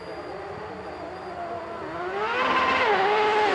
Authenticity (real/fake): real